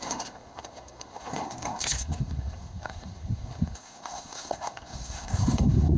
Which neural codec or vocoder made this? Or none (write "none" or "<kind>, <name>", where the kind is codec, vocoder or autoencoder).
codec, SNAC